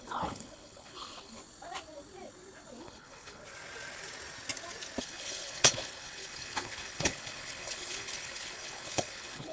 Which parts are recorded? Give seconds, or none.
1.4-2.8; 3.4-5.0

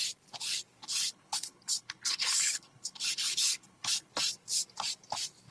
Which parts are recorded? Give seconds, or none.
0.0-0.8; 4.1-5.5

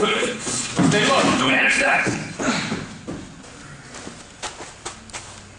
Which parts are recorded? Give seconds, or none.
0.7-1.4; 2.2-5.6

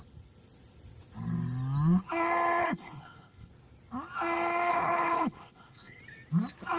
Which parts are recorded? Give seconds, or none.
0.0-2.6; 3.5-4.7; 6.0-6.8

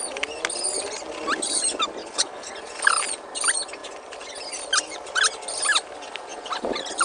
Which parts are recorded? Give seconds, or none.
0.0-2.0; 2.5-7.0

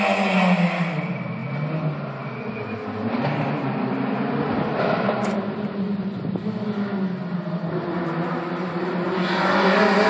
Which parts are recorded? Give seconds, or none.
0.0-10.1

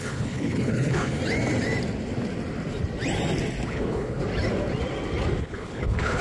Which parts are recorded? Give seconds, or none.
1.2-3.7; 4.2-5.4